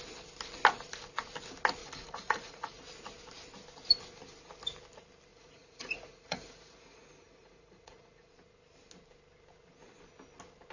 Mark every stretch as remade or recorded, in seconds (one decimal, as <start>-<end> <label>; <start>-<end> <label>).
0.0-1.8 recorded; 1.8-2.8 remade; 2.8-5.3 recorded; 5.3-8.3 remade; 8.3-10.7 recorded